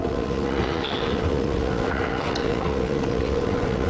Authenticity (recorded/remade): remade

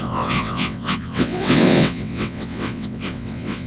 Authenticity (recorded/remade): remade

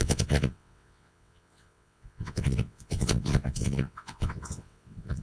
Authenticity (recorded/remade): remade